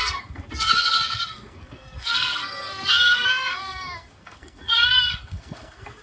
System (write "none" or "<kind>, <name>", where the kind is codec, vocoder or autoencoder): codec, SNAC